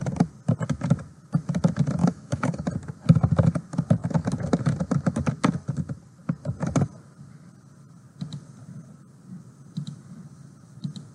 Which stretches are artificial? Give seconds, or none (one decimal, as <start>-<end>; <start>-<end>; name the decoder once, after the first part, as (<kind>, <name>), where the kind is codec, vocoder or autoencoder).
2.0-2.6 (autoencoder, DAC-VAE)